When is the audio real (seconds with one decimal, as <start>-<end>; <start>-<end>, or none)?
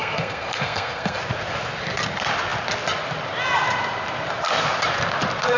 1.2-5.6